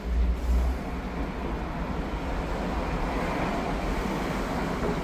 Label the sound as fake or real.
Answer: real